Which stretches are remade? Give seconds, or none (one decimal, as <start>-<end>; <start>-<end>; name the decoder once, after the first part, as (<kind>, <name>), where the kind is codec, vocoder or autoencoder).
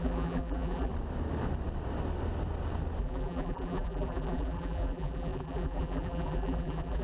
0.0-0.9 (vocoder, BigVGAN v2); 3.0-7.0